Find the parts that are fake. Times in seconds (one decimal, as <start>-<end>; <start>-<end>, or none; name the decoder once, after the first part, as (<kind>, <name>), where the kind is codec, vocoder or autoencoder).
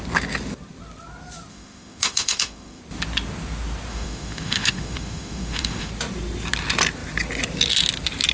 1.5-2.8 (autoencoder, DAC-VAE); 3.9-5.9